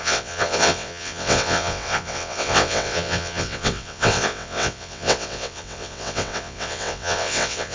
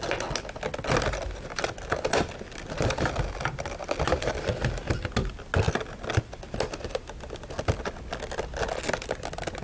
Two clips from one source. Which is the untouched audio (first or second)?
second